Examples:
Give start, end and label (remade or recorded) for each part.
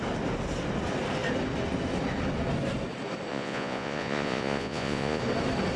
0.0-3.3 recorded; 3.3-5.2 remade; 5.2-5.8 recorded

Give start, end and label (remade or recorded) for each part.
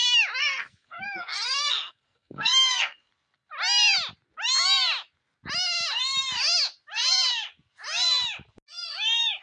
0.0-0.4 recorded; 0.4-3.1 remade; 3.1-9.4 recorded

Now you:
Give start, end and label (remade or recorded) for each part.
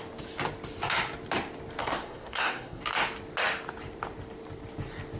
0.0-1.8 recorded; 1.8-2.8 remade; 2.8-5.2 recorded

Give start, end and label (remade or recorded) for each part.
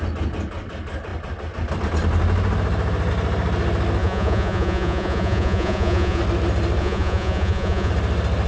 0.0-4.0 recorded; 4.0-6.2 remade; 6.2-6.8 recorded; 6.8-7.9 remade; 7.9-8.5 recorded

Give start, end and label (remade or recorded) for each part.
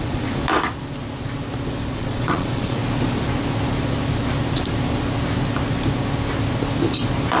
0.0-0.4 remade; 0.4-1.9 recorded; 1.9-2.8 remade; 2.8-7.4 recorded